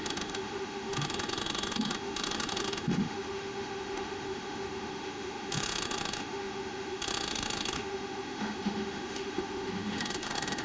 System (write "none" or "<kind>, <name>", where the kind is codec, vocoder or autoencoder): autoencoder, DAC-VAE